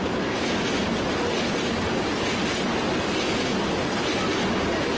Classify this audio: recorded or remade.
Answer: recorded